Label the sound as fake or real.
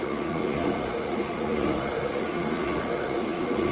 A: fake